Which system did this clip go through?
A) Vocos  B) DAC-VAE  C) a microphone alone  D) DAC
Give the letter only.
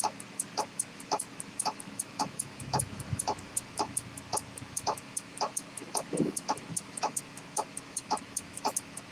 B